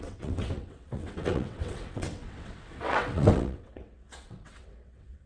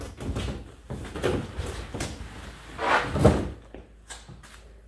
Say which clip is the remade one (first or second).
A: first